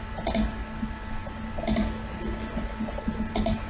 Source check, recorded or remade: recorded